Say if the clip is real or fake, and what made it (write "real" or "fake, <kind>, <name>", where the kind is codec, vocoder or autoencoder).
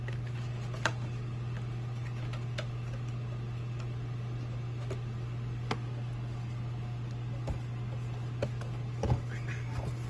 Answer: real